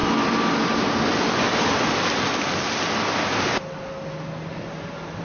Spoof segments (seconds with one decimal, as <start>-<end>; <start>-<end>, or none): none